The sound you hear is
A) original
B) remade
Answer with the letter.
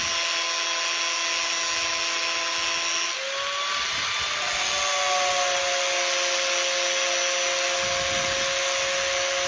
A